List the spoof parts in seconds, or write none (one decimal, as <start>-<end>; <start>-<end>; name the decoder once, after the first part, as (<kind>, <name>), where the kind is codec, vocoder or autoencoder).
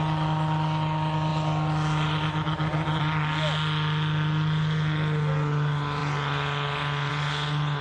none